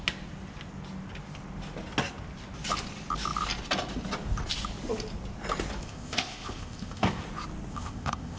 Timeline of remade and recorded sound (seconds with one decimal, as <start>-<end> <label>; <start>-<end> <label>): 0.0-5.8 recorded; 5.8-7.2 remade; 7.2-7.7 recorded; 7.7-8.4 remade

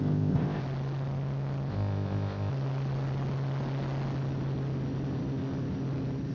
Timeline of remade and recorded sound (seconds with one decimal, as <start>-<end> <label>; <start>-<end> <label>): 0.0-0.6 remade; 0.6-1.7 recorded; 1.7-2.5 remade; 2.5-6.3 recorded